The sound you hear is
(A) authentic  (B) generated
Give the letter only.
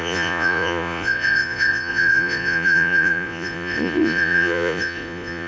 B